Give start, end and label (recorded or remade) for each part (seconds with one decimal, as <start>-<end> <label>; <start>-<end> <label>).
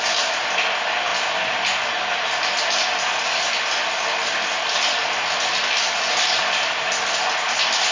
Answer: 0.0-7.9 recorded